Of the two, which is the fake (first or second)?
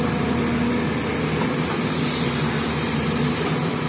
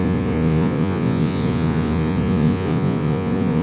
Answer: second